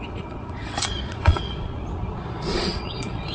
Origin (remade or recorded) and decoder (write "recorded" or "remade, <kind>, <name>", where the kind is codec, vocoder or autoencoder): remade, vocoder, Vocos